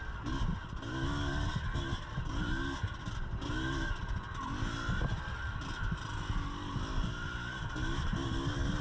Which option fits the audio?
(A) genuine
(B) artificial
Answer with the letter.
A